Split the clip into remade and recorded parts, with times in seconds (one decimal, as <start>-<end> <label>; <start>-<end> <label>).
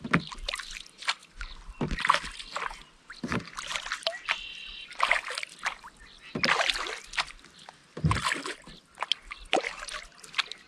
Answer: 0.0-10.7 recorded